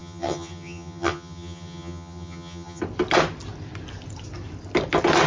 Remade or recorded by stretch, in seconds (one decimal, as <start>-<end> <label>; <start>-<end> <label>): 0.0-2.8 remade; 2.8-5.3 recorded